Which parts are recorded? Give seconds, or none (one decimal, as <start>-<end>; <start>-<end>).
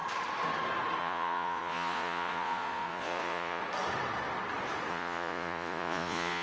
0.0-1.0; 3.6-4.9